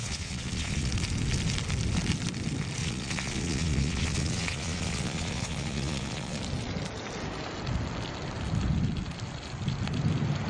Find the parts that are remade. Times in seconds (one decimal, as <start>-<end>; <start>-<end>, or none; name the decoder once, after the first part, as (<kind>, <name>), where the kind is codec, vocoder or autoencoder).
0.0-0.9 (vocoder, Vocos); 2.8-6.4